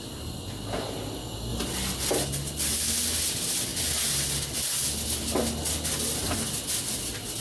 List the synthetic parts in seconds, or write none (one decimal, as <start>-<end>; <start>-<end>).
none